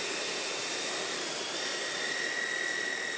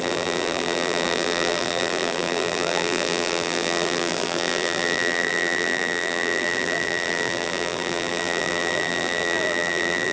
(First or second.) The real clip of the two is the first